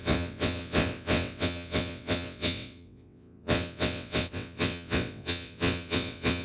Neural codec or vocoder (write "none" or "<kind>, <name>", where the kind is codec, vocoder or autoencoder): vocoder, WaveNeXt